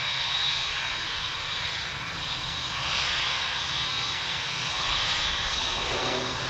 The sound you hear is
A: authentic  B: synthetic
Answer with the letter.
B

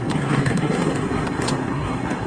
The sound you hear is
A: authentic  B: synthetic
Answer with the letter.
B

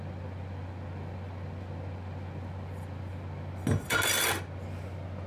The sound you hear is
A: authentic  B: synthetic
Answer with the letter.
A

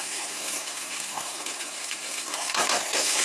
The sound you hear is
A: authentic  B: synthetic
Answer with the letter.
B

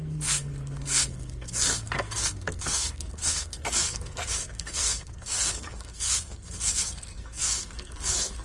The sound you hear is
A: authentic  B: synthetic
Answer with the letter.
B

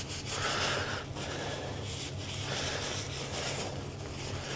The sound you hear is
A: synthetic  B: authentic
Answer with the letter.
B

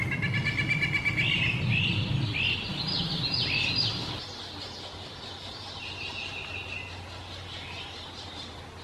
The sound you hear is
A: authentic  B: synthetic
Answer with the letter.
A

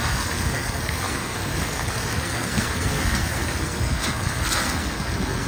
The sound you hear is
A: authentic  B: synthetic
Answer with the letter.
B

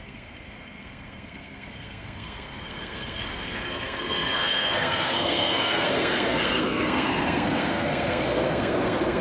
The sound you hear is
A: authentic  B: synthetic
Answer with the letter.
B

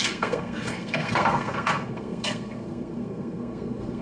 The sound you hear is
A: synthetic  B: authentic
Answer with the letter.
A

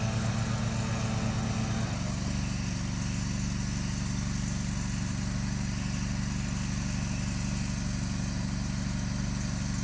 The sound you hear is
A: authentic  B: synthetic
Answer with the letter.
A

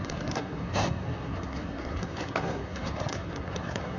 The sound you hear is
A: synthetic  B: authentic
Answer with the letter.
A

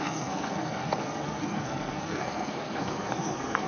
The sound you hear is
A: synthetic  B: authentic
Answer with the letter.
A